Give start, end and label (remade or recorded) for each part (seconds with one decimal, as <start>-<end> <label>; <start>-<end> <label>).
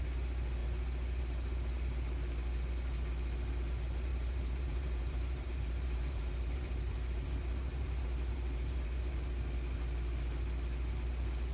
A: 0.0-4.1 recorded; 4.1-9.3 remade; 9.3-11.5 recorded